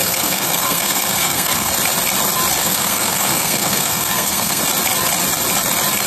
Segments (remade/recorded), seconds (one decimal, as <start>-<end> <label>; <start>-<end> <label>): 0.0-1.7 remade; 1.7-2.6 recorded; 2.6-4.6 remade; 4.6-6.1 recorded